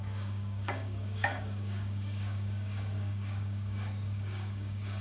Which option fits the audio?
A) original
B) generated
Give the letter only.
B